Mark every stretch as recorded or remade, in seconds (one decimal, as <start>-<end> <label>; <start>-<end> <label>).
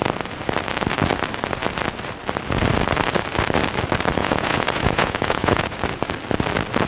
0.0-4.2 recorded; 4.2-5.8 remade; 5.8-6.9 recorded